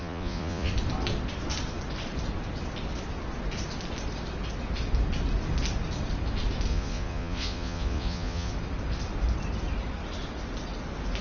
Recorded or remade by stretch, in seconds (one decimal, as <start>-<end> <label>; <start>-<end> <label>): 0.0-0.7 remade; 0.7-6.7 recorded; 6.7-8.5 remade; 8.5-11.2 recorded